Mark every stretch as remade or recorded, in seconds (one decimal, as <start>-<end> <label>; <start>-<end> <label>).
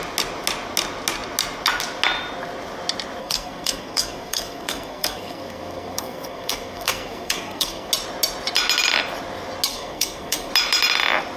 0.0-3.2 recorded; 3.2-7.9 remade; 7.9-9.7 recorded; 9.7-10.5 remade; 10.5-11.4 recorded